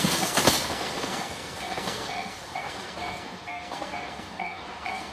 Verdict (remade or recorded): remade